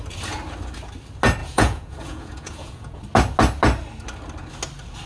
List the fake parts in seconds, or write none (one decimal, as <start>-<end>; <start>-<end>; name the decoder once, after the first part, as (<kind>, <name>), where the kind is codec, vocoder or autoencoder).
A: 1.4-3.0 (vocoder, Vocos)

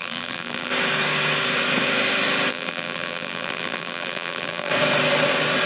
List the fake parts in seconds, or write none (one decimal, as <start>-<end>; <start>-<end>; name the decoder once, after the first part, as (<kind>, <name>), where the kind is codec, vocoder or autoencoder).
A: 0.0-0.7 (vocoder, BigVGAN v2); 2.5-4.7

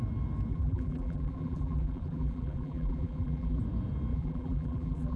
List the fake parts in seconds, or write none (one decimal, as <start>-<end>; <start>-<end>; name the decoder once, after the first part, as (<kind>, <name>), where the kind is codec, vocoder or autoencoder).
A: 0.5-3.6 (vocoder, BigVGAN v2); 4.1-5.2

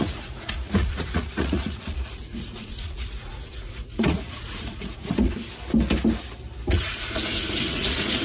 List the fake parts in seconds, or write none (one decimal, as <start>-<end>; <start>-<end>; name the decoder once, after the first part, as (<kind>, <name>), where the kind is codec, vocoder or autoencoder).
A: 0.0-5.4 (vocoder, Vocos); 6.7-8.2

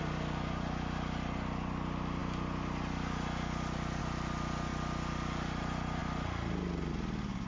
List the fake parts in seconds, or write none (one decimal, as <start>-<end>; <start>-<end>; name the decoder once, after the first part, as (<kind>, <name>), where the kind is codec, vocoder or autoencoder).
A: none

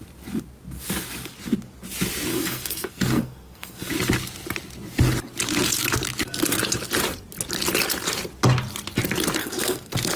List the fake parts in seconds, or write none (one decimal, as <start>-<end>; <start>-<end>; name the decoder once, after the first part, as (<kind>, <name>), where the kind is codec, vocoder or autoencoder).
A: 2.3-3.9 (codec, SNAC); 9.4-10.2

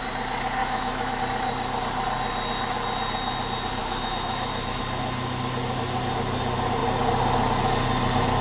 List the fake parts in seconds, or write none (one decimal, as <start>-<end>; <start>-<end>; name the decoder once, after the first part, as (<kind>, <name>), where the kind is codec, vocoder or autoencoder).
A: 0.6-1.2 (autoencoder, DAC-VAE); 3.8-4.8